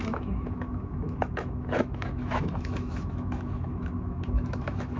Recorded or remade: remade